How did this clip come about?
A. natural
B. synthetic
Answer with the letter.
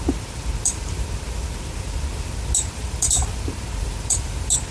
A